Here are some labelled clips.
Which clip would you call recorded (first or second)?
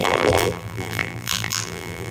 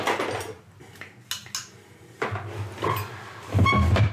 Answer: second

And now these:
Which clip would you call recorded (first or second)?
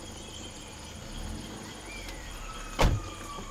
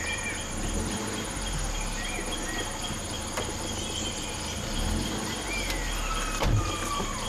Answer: second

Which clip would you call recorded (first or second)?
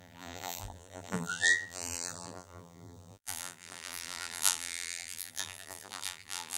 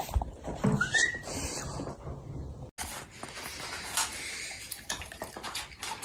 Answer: second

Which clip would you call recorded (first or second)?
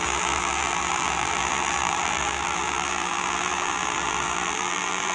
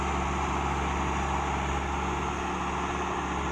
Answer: second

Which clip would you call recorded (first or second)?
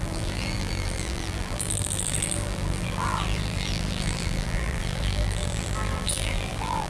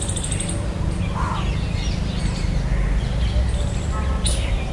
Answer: second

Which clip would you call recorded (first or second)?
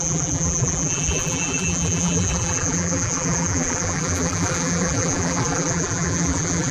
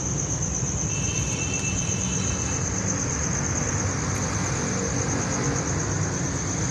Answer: second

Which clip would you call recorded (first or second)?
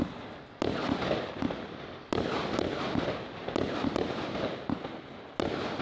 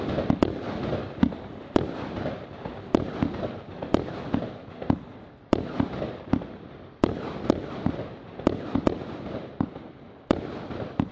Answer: first